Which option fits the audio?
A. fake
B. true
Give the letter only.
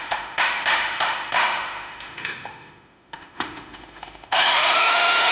A